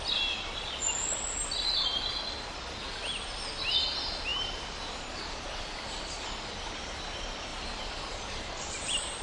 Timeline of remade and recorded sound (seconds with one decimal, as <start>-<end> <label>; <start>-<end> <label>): 0.0-7.5 recorded; 7.5-9.2 remade